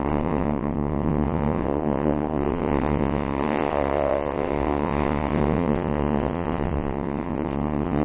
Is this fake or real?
fake